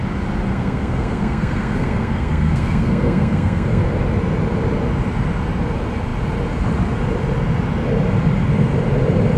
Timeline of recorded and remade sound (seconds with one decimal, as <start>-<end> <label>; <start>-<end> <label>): 0.0-0.5 recorded; 0.5-3.8 remade; 3.8-9.4 recorded